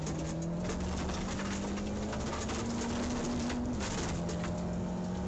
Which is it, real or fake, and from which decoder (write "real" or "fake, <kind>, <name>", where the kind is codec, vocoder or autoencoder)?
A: real